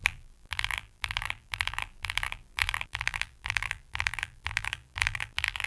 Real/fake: fake